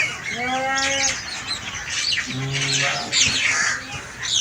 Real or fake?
real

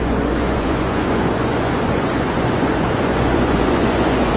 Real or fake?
fake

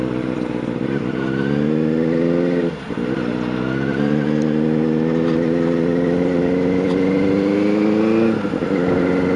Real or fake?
real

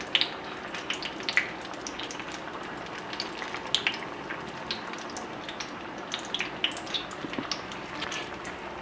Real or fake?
real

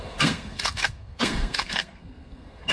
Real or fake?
fake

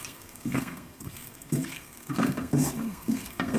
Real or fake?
fake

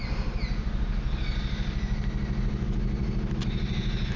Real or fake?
real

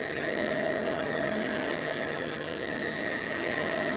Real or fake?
fake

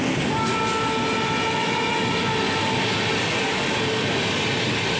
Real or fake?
real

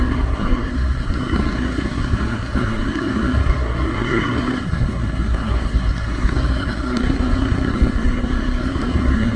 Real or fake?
fake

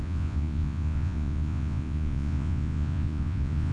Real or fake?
fake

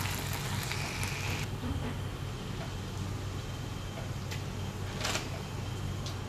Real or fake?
real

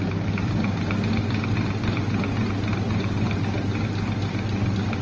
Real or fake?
real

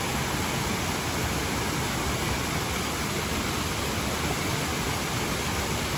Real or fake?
real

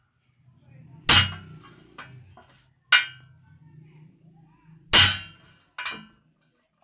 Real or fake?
real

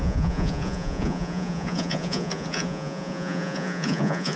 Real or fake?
fake